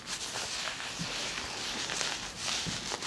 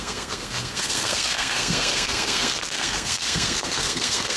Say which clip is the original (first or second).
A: first